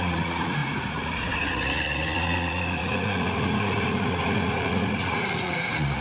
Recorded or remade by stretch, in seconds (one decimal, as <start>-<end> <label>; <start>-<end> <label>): 0.0-6.0 remade